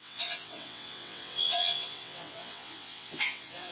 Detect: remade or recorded remade